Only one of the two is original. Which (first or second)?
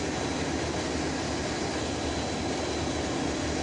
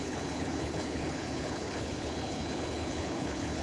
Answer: first